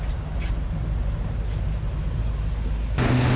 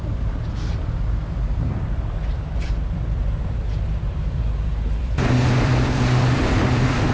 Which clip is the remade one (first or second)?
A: second